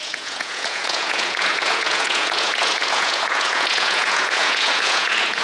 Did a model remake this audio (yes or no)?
yes